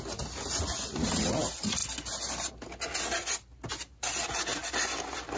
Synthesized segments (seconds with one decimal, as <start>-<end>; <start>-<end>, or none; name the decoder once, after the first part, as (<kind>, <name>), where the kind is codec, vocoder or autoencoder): 4.6-5.4 (vocoder, BigVGAN v2)